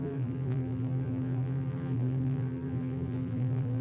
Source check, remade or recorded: remade